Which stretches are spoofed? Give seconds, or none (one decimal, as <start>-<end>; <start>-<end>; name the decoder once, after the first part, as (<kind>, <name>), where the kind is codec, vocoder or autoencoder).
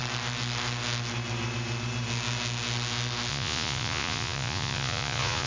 3.3-5.5 (vocoder, Vocos)